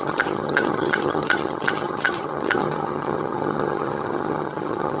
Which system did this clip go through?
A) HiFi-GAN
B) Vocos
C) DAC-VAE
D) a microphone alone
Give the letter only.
A